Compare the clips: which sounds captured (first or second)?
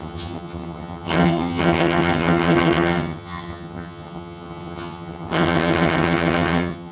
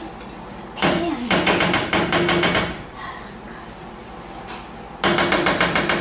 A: second